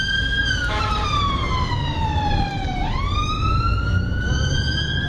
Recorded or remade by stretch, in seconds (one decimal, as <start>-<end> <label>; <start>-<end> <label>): 0.0-1.1 recorded; 1.1-3.8 remade; 3.8-5.1 recorded